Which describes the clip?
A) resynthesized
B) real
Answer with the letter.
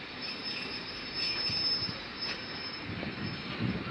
B